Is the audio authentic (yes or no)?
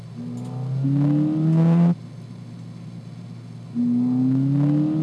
yes